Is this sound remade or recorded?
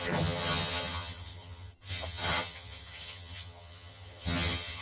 remade